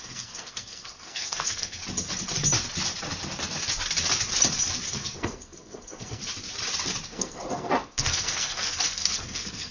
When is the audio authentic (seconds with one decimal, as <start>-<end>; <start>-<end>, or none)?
1.8-4.9; 6.2-7.1

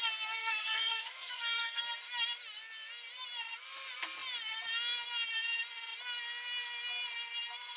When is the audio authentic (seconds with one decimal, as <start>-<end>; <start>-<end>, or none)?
0.0-0.4; 1.8-7.8

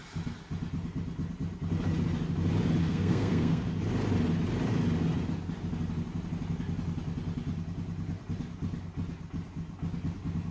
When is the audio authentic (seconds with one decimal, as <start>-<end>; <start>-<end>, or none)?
0.0-2.8; 3.7-10.5

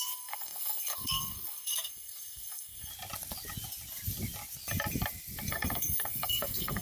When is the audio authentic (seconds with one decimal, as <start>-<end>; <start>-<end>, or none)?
2.9-5.5

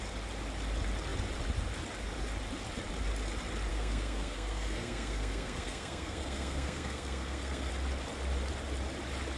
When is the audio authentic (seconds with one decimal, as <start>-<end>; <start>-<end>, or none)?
0.0-3.7; 7.7-9.4

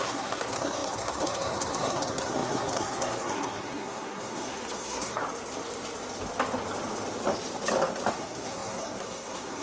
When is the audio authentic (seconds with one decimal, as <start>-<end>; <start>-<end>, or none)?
5.2-8.1

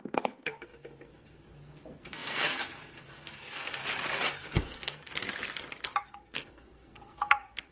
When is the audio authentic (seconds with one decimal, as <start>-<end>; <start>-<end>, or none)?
3.8-4.3; 5.1-6.0